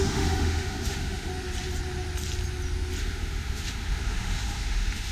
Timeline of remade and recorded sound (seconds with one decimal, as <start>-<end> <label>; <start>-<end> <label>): 0.0-1.3 remade; 1.3-3.0 recorded; 3.0-5.1 remade